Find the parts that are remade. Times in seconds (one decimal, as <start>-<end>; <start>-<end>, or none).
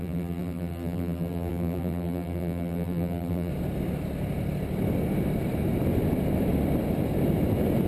0.0-3.5